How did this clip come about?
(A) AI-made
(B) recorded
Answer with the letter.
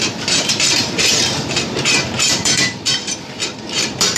A